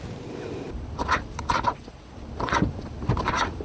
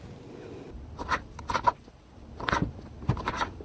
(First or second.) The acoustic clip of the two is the second